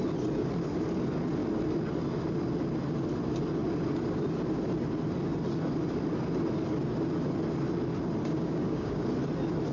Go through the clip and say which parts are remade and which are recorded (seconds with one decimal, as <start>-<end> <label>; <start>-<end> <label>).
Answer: 0.0-8.2 recorded; 8.2-9.0 remade; 9.0-9.7 recorded